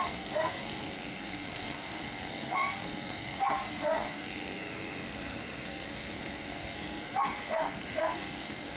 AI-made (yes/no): yes